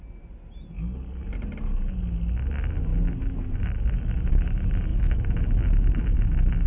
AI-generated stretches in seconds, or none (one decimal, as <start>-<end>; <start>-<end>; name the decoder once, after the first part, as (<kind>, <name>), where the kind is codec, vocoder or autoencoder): none